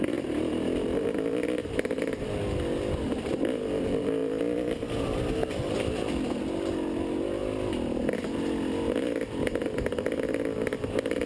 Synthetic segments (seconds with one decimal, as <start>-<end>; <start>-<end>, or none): none